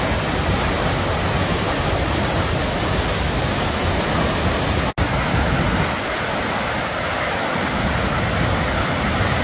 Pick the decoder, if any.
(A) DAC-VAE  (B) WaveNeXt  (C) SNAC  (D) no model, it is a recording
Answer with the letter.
D